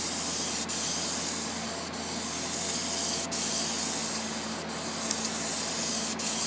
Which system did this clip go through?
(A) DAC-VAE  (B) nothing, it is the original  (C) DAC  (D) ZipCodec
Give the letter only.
B